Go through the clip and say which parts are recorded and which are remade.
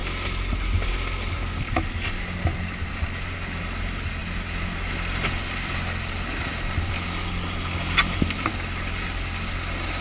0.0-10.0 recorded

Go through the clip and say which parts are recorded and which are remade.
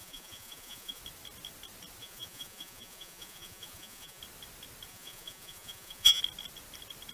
0.0-1.0 remade; 1.0-2.0 recorded; 2.0-4.2 remade; 4.2-4.9 recorded; 4.9-6.2 remade; 6.2-7.1 recorded